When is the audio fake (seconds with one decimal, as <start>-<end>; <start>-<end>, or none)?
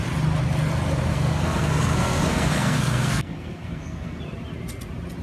1.1-4.2